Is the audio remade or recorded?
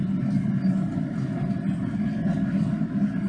recorded